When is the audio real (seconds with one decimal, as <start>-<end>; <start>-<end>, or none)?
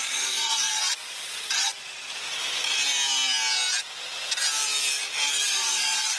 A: 1.7-5.4